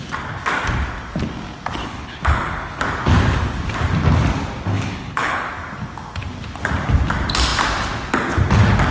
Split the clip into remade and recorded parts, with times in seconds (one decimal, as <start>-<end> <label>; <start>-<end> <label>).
0.0-1.8 recorded; 1.8-2.8 remade; 2.8-4.7 recorded; 4.7-5.5 remade; 5.5-8.9 recorded